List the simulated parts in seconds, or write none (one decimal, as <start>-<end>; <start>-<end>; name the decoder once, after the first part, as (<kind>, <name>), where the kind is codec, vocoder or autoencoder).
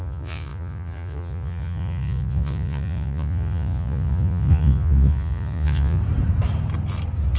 0.0-6.0 (vocoder, Vocos)